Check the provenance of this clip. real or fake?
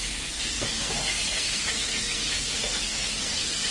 fake